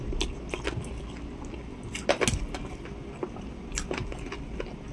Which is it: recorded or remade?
recorded